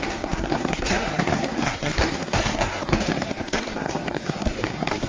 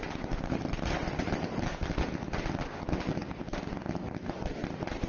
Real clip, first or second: second